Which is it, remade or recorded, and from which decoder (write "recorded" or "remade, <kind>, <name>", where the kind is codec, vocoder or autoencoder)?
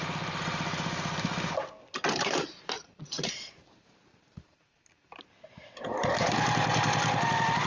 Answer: remade, vocoder, BigVGAN v2